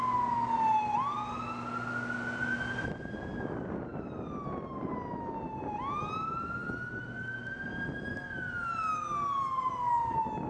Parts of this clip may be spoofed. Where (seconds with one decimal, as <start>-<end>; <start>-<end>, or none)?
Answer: none